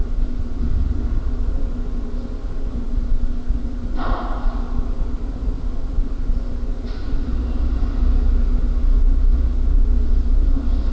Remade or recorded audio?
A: recorded